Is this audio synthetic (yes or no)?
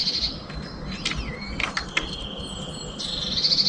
no